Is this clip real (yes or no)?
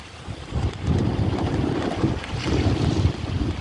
yes